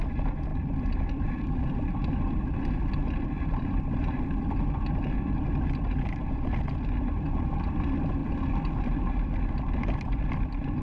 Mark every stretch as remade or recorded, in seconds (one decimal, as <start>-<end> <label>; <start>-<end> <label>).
0.0-10.8 recorded